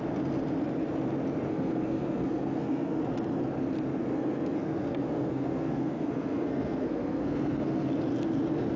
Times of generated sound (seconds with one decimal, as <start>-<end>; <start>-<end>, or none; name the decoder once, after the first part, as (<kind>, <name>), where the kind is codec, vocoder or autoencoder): 1.5-3.0 (codec, SNAC); 4.1-7.9